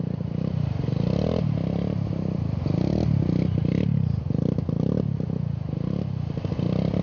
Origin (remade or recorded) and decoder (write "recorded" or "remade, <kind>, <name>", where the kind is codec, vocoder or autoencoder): recorded